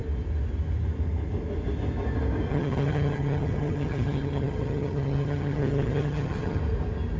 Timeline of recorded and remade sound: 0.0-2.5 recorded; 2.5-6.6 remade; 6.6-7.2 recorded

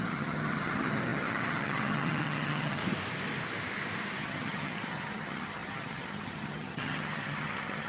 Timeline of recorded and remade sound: 0.0-2.8 remade; 2.8-4.2 recorded; 4.2-7.9 remade

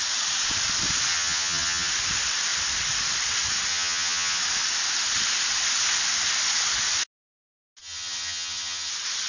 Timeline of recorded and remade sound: 0.0-1.1 recorded; 1.1-1.9 remade; 1.9-3.7 recorded; 3.7-4.4 remade; 4.4-7.8 recorded; 7.8-8.9 remade; 8.9-9.3 recorded